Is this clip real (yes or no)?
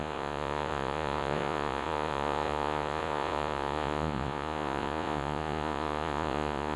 no